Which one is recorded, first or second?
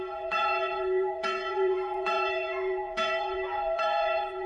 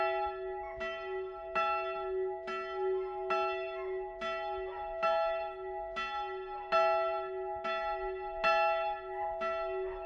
second